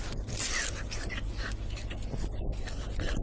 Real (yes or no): yes